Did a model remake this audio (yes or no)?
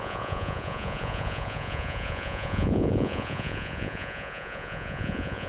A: yes